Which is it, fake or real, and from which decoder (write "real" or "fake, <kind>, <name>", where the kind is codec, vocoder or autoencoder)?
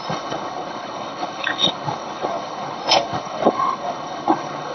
fake, codec, HILCodec